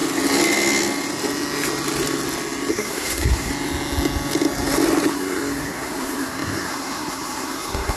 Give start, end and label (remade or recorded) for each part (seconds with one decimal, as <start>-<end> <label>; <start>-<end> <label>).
0.0-2.7 recorded; 2.7-3.5 remade; 3.5-5.1 recorded; 5.1-8.0 remade